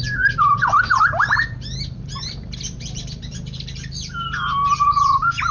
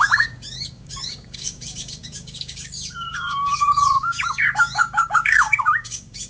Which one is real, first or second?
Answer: first